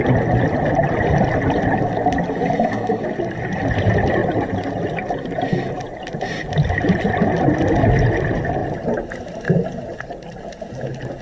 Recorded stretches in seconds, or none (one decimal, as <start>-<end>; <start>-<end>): 0.0-4.2; 6.4-8.6; 9.1-11.2